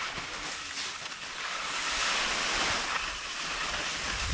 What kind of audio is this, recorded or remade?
recorded